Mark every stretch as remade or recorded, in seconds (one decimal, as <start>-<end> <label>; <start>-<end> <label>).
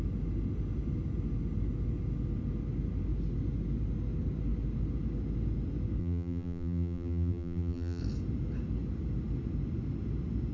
0.0-6.0 recorded; 6.0-8.0 remade; 8.0-10.5 recorded